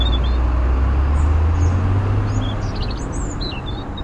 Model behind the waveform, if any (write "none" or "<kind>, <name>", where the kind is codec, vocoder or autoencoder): none